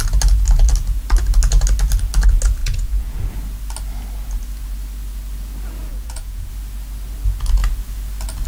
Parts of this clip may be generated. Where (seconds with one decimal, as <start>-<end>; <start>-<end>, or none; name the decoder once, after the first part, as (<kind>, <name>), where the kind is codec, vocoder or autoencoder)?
2.6-3.3 (vocoder, Vocos); 5.9-6.5